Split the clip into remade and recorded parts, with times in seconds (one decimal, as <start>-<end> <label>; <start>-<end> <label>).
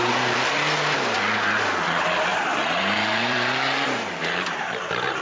0.0-2.3 recorded; 2.3-5.2 remade